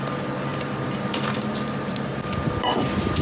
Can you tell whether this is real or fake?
real